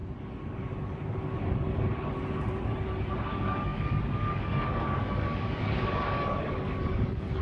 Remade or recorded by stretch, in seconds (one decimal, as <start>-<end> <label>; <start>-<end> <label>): 0.0-3.1 recorded; 3.1-7.4 remade